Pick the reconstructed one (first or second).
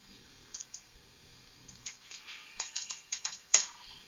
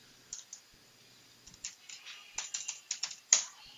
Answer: first